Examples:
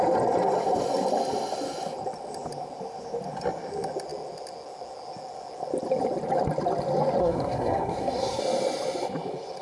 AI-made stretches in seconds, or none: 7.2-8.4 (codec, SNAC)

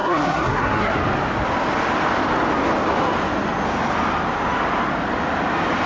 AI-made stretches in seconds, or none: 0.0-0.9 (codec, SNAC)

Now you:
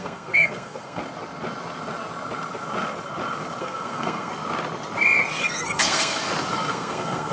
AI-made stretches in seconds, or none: 0.0-1.0 (codec, SNAC); 3.6-4.3; 5.4-6.2; 6.7-7.3

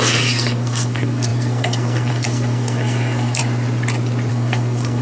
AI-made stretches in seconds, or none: 0.0-3.4 (codec, SNAC); 4.3-5.0

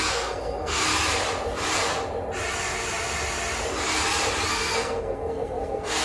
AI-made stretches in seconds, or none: 0.0-0.9 (codec, SNAC); 4.5-6.0

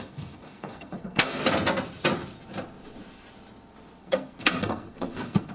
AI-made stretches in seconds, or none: 0.0-1.4 (codec, SNAC); 4.0-5.5

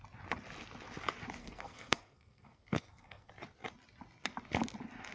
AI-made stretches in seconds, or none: 1.4-3.3 (codec, SNAC)